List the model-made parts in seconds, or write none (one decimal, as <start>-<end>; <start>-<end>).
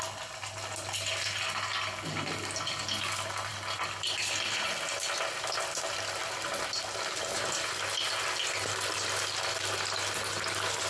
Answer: none